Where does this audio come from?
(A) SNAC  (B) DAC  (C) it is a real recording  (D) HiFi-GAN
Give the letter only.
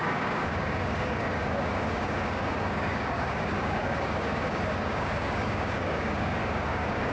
B